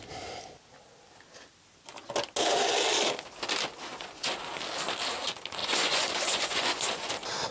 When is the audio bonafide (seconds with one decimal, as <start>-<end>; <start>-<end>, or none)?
0.0-3.9; 4.4-5.6; 7.1-7.5